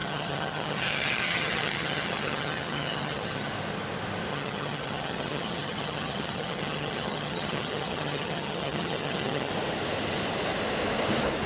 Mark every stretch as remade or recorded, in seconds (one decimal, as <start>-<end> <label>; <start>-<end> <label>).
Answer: 0.0-3.5 remade; 3.5-4.3 recorded; 4.3-9.5 remade; 9.5-11.5 recorded